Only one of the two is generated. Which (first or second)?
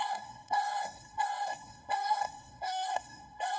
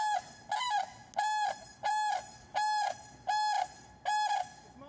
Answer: first